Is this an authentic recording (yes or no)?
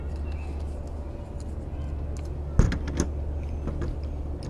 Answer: yes